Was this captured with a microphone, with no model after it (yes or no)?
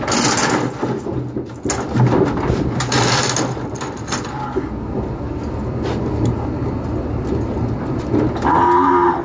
yes